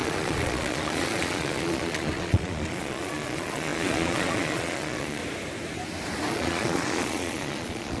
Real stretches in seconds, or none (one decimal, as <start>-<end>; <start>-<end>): 5.2-6.3